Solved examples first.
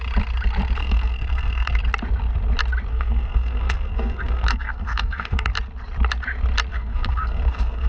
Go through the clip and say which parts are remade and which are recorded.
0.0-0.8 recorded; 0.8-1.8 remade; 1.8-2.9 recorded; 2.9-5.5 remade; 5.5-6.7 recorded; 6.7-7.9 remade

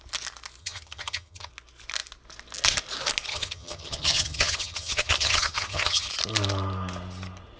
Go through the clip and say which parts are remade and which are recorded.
0.0-0.6 recorded; 0.6-1.5 remade; 1.5-3.3 recorded; 3.3-6.1 remade; 6.1-7.6 recorded

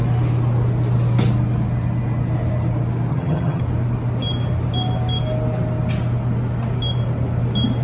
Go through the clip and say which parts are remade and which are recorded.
0.0-3.1 recorded; 3.1-3.6 remade; 3.6-7.8 recorded

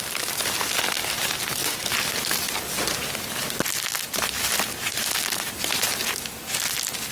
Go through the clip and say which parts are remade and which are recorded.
0.0-7.1 recorded